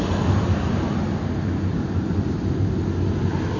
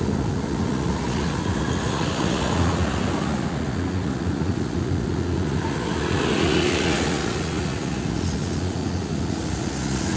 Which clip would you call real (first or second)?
first